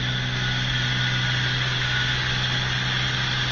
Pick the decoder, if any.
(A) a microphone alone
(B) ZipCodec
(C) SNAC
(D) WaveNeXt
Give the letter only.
A